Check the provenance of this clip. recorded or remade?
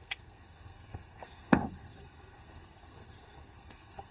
remade